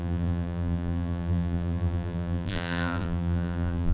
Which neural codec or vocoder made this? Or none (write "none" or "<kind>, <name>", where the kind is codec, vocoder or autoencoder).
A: vocoder, BigVGAN v2